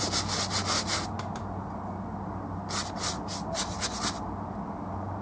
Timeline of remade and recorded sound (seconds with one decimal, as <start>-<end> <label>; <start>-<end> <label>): 0.0-5.2 recorded